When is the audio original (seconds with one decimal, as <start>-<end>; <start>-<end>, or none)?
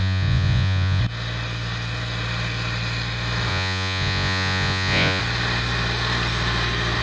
1.0-3.5; 5.2-7.0